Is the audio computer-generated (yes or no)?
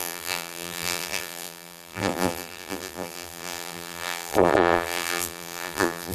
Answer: yes